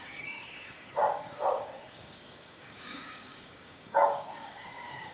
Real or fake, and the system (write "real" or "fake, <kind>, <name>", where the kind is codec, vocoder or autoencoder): fake, codec, DAC